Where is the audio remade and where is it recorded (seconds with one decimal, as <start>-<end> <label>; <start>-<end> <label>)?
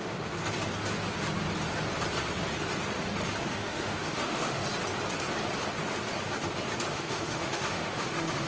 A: 0.0-0.4 remade; 0.4-3.4 recorded; 3.4-4.6 remade; 4.6-6.9 recorded; 6.9-8.5 remade